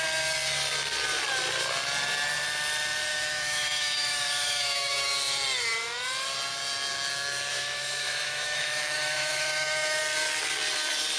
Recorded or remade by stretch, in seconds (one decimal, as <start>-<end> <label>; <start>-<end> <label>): 0.0-3.1 recorded; 3.1-5.2 remade; 5.2-7.5 recorded; 7.5-10.0 remade; 10.0-11.2 recorded